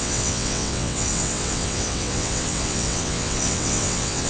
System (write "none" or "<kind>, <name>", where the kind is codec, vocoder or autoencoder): vocoder, WaveNeXt